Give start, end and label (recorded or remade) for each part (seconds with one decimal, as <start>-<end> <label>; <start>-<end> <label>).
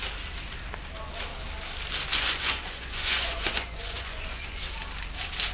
0.0-2.1 recorded; 2.1-4.7 remade; 4.7-5.5 recorded